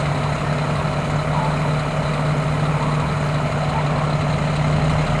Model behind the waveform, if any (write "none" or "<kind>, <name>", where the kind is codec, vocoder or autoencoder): none